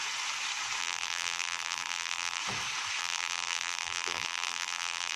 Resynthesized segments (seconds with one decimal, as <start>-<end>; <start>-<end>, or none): 0.8-2.4; 3.0-5.2